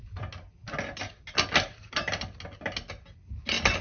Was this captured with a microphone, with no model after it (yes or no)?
yes